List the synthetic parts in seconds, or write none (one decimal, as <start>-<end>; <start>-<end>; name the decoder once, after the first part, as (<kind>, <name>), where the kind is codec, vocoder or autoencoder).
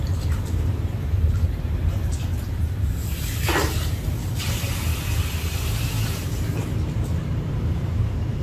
0.0-3.0 (vocoder, BigVGAN v2); 4.5-4.9; 7.5-8.4